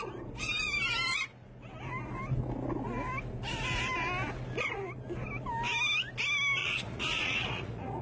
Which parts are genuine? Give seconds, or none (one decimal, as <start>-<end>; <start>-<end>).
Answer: 0.0-6.6